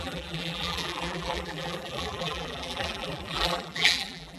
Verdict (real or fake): fake